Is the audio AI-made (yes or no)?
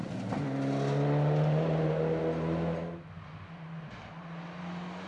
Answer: no